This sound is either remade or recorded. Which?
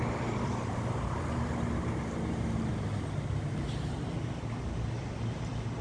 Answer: recorded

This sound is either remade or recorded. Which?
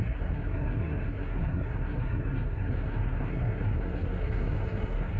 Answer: remade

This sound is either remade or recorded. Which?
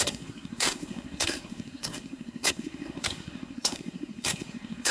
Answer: remade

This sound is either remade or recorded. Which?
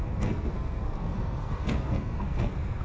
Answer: remade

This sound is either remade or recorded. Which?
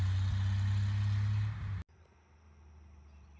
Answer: recorded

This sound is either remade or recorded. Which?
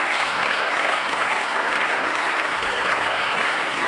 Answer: remade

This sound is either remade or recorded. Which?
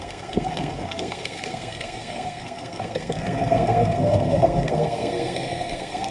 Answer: remade